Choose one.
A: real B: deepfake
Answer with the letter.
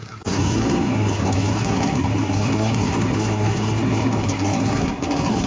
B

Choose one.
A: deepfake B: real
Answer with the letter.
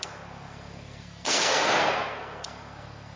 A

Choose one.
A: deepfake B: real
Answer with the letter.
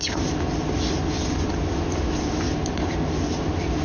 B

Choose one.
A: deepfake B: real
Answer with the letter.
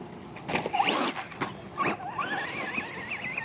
B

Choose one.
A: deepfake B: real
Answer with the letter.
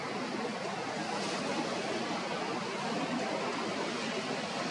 B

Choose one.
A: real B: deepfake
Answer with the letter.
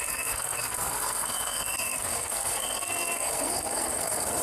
B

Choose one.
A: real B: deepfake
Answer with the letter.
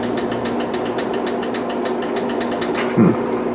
A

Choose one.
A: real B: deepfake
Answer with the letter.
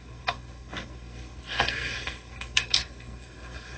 B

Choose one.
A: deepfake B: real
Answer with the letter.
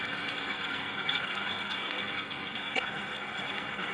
A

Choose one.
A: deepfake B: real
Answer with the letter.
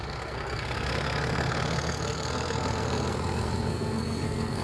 A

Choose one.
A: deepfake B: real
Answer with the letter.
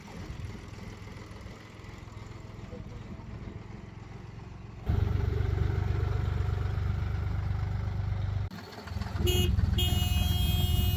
B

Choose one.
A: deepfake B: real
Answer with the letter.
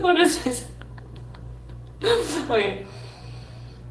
A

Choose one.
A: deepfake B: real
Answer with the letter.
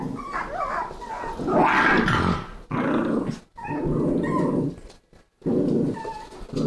B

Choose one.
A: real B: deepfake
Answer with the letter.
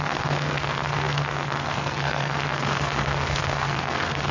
B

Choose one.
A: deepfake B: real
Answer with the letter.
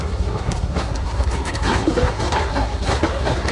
A